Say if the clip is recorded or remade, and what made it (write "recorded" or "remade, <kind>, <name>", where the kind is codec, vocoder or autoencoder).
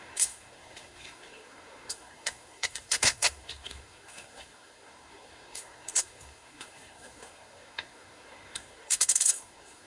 remade, codec, SNAC